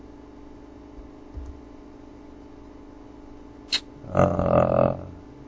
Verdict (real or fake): real